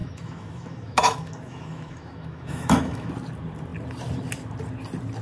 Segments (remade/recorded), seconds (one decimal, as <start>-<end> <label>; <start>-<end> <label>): 0.0-3.1 remade; 3.1-5.2 recorded